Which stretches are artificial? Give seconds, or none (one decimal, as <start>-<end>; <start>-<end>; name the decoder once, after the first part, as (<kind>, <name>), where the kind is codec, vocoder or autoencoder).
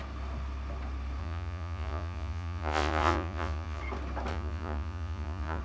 1.2-3.8 (vocoder, Vocos); 4.3-5.6